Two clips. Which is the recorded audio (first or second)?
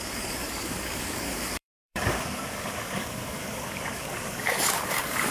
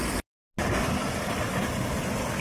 second